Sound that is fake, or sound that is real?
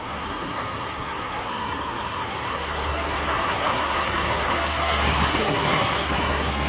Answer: fake